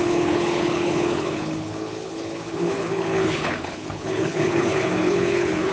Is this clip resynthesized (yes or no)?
yes